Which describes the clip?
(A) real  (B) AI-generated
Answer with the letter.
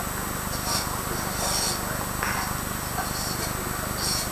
A